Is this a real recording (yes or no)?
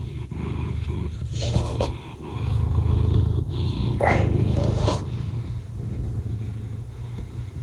no